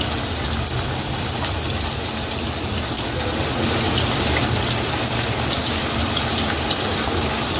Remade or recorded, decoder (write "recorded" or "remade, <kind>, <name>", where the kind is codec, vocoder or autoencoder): recorded